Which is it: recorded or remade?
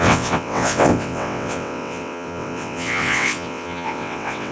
remade